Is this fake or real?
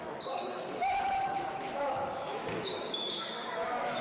fake